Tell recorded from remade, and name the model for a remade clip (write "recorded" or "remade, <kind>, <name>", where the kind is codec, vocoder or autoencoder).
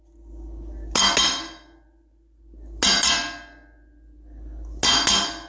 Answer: recorded